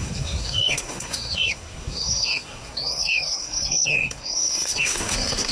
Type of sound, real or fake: fake